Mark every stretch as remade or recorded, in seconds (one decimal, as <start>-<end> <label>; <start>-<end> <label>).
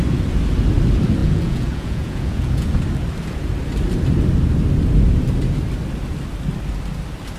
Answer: 0.0-1.2 recorded; 1.2-2.8 remade; 2.8-7.4 recorded